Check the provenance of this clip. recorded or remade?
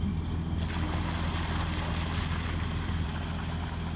recorded